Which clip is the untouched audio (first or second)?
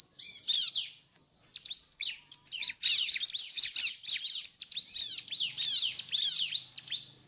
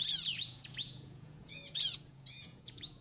first